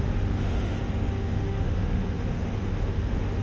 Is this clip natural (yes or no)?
no